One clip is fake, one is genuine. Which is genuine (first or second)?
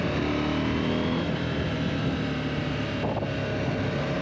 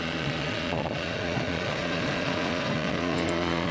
first